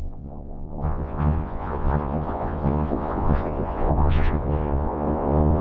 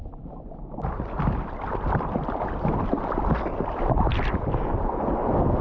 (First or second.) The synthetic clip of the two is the first